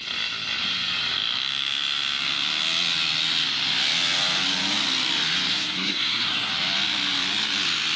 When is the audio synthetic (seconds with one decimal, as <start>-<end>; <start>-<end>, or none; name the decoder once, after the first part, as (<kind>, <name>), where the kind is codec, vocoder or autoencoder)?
5.5-6.5 (codec, SNAC)